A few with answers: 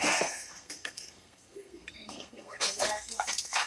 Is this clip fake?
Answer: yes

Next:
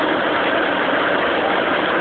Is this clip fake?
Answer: no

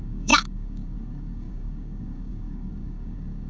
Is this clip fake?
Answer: yes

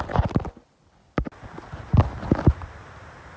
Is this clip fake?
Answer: no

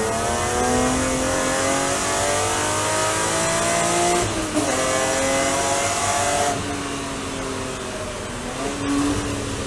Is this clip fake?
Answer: no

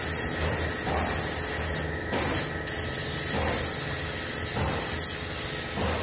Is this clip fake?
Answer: no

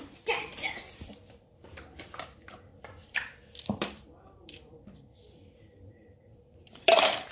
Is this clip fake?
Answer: yes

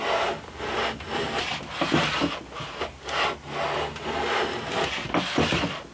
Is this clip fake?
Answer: no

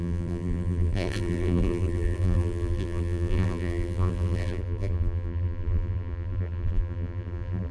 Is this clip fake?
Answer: yes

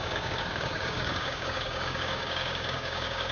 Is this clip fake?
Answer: yes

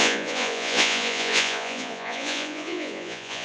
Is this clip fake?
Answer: yes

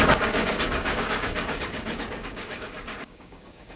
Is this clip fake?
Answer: yes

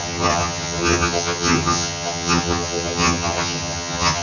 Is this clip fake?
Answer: yes